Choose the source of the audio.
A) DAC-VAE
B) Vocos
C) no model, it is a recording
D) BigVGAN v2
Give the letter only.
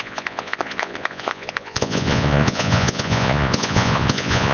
B